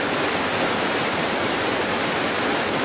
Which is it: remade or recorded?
recorded